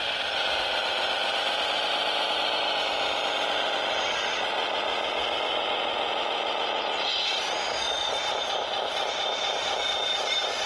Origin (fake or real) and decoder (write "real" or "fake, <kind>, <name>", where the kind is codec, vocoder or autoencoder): real